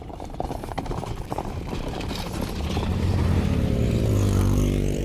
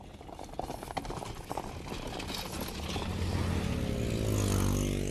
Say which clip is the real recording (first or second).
second